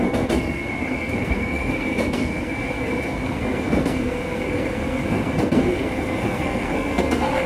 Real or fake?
fake